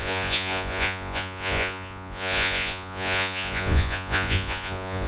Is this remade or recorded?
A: remade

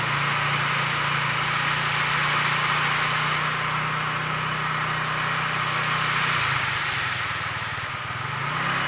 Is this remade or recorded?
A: recorded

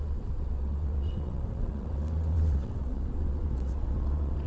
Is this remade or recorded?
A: remade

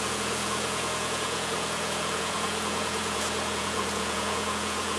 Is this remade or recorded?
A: remade